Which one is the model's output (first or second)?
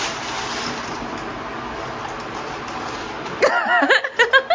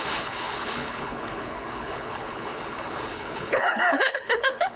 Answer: second